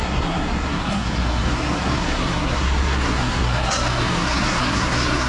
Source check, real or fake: fake